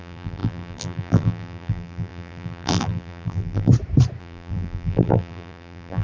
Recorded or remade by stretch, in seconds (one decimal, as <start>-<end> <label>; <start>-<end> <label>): 0.0-3.7 remade; 3.7-4.2 recorded; 4.2-6.0 remade